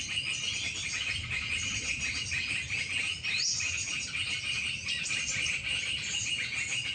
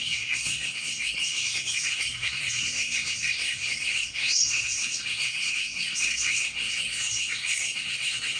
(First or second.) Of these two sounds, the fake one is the second